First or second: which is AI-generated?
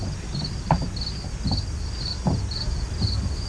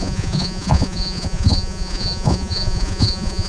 second